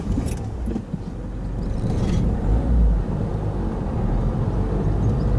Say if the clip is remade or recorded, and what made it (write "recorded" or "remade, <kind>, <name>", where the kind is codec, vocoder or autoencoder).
recorded